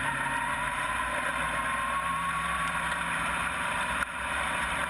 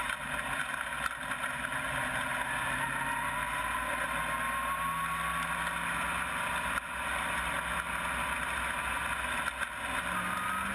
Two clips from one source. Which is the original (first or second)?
second